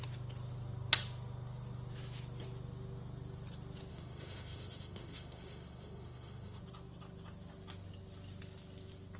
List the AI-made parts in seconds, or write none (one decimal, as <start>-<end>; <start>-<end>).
3.9-6.6